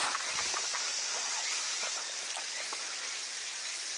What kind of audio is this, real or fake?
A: fake